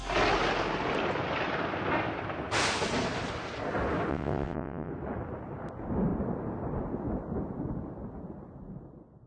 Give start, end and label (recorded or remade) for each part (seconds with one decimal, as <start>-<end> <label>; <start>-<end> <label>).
0.0-4.1 recorded; 4.1-4.9 remade; 4.9-9.3 recorded